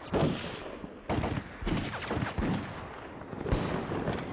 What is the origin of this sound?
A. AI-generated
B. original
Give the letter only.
B